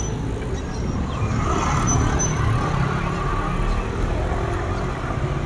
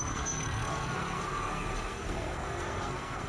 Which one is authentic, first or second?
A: first